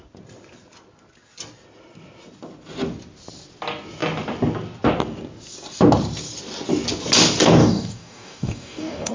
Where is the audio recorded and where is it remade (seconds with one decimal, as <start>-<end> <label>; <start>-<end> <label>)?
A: 0.0-7.6 recorded; 7.6-9.1 remade